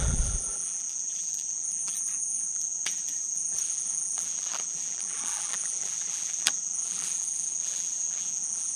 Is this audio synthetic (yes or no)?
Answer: yes